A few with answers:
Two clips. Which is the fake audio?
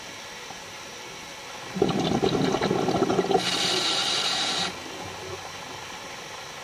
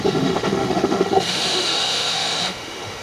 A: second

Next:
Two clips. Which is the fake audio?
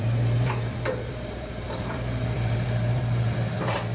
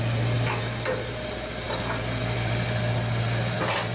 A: first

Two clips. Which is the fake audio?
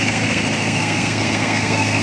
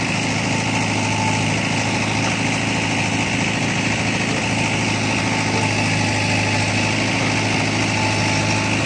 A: first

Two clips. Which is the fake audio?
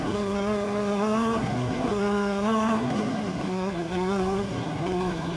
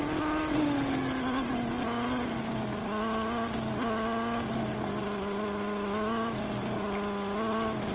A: first